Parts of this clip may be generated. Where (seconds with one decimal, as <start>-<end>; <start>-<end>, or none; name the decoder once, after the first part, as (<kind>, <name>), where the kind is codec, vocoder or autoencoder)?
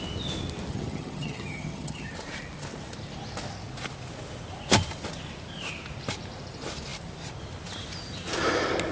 0.7-2.1 (vocoder, HiFi-GAN)